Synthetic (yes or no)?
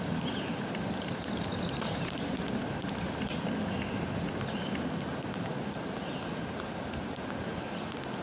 no